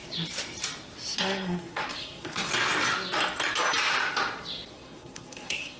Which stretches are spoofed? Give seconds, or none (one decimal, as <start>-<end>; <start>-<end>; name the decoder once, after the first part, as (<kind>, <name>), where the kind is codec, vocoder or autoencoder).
1.2-2.5 (codec, SNAC); 4.7-5.8